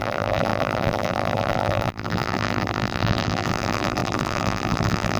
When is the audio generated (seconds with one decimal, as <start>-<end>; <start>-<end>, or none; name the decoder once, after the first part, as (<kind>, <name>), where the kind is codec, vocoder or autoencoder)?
0.0-5.2 (vocoder, BigVGAN v2)